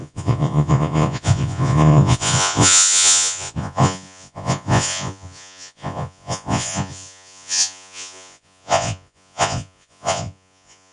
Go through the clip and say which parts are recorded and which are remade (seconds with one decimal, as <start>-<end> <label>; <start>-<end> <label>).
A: 0.0-10.9 remade